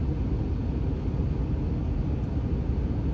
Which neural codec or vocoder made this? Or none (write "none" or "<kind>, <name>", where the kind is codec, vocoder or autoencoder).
none